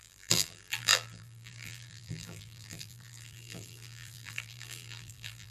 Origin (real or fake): fake